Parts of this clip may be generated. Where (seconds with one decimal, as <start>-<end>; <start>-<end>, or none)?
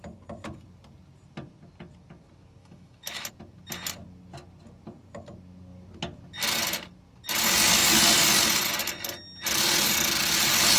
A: 2.6-3.3